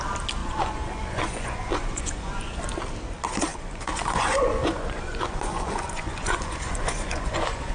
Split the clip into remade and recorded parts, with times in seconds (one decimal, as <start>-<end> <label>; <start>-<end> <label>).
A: 0.0-0.4 recorded; 0.4-2.6 remade; 2.6-3.5 recorded; 3.5-7.7 remade